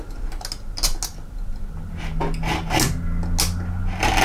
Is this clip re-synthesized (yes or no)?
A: no